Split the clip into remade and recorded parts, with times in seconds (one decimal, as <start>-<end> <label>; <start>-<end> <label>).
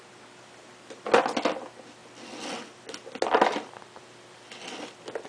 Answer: 0.0-5.3 recorded